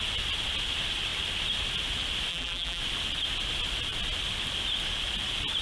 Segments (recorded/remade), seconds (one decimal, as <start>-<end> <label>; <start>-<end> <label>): 0.0-2.3 recorded; 2.3-2.8 remade; 2.8-5.6 recorded